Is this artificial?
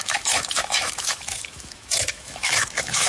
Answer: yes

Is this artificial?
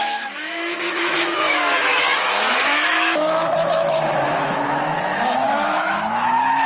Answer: yes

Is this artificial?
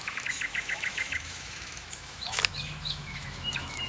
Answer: yes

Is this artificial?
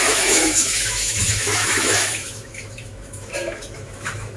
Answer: yes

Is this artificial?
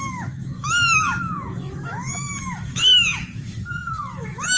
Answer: yes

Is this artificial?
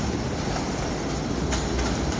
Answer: no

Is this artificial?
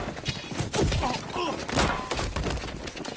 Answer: no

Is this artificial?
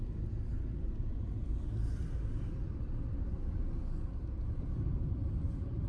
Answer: no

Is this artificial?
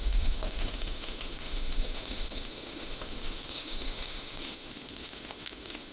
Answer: yes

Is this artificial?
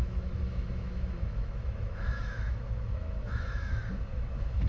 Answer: yes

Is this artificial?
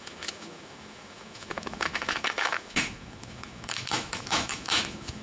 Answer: yes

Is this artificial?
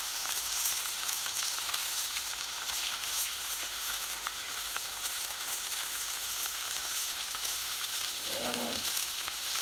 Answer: yes